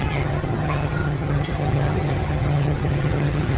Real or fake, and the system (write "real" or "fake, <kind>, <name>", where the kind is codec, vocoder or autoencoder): fake, vocoder, HiFi-GAN